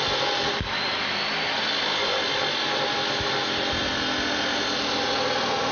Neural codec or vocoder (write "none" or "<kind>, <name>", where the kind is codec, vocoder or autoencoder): none